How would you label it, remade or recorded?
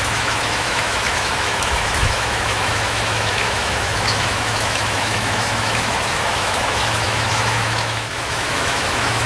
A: remade